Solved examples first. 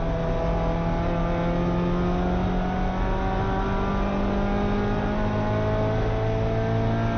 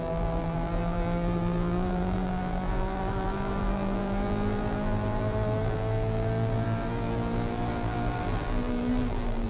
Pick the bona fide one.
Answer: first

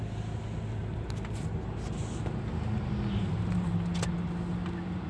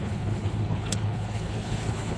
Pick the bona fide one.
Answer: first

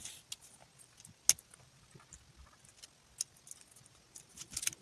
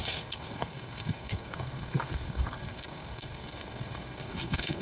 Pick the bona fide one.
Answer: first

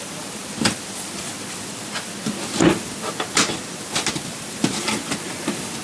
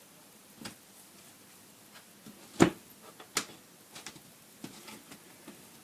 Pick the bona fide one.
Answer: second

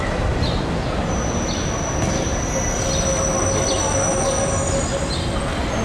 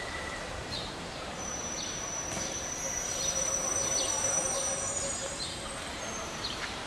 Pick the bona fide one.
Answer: first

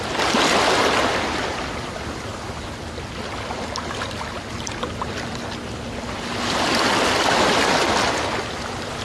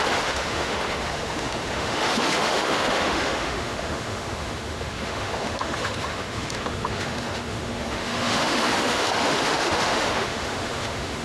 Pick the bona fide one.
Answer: first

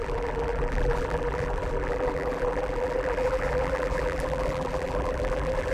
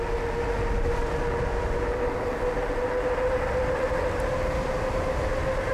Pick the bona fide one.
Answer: second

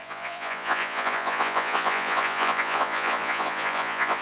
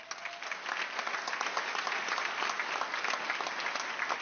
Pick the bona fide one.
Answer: second